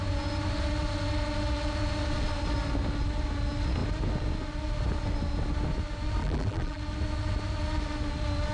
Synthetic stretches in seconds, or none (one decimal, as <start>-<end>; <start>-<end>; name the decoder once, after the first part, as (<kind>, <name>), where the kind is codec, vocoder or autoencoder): 6.2-6.8 (vocoder, BigVGAN v2)